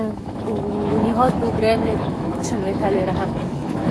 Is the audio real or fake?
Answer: fake